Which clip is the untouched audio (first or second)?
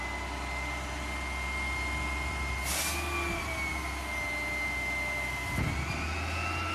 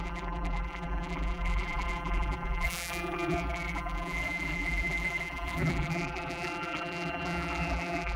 first